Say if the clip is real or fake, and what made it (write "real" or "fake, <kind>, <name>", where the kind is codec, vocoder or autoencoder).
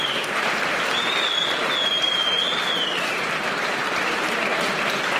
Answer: real